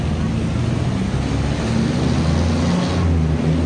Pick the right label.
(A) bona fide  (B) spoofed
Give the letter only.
A